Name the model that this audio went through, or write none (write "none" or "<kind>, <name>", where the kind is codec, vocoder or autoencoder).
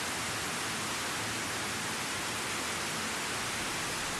none